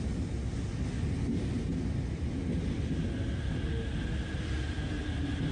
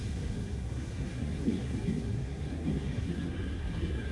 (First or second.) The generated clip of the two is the second